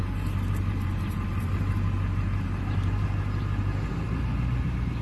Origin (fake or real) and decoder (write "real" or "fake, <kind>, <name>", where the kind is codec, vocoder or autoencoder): fake, vocoder, BigVGAN v2